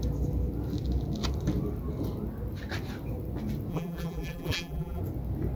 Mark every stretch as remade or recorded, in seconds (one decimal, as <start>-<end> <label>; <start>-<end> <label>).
0.0-3.7 recorded; 3.7-5.0 remade; 5.0-5.6 recorded